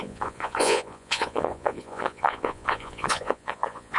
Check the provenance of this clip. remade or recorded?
remade